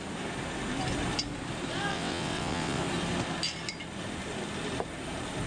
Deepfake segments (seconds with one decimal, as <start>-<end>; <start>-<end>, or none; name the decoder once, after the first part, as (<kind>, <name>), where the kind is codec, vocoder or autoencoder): 1.9-2.8 (vocoder, WaveNeXt)